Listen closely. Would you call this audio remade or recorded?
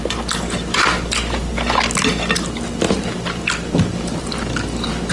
recorded